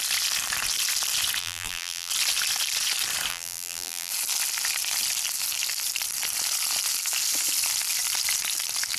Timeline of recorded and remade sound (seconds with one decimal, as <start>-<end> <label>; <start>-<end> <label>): 0.0-1.4 recorded; 1.4-2.1 remade; 2.1-3.3 recorded; 3.3-4.1 remade; 4.1-9.0 recorded